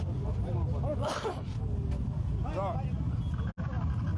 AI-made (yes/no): no